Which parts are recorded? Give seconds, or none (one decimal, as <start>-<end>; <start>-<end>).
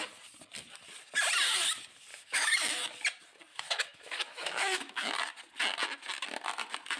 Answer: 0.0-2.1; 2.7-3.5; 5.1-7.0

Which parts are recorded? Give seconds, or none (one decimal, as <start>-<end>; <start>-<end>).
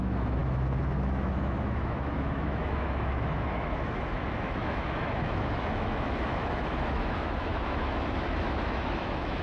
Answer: none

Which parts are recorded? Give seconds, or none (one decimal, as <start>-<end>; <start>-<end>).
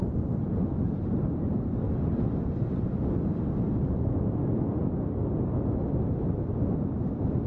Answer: 0.0-7.5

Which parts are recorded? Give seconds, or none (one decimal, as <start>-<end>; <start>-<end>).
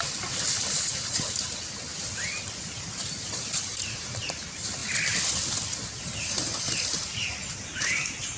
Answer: 0.0-8.4